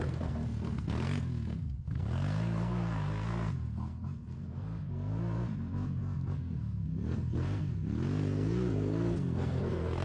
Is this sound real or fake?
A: fake